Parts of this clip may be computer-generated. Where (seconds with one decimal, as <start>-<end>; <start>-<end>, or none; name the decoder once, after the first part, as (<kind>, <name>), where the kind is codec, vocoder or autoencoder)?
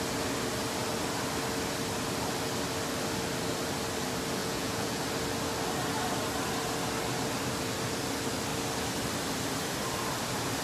4.4-5.0 (vocoder, Vocos)